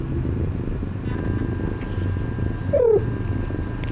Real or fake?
real